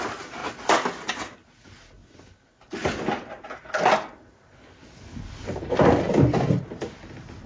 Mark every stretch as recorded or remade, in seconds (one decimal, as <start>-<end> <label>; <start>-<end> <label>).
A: 0.0-7.5 recorded